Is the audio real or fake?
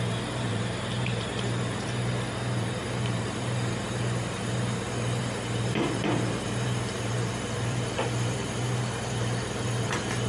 fake